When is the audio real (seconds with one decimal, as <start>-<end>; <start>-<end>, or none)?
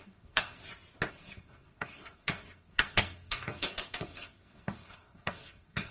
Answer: 0.6-1.1